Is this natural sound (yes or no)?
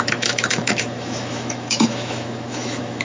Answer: no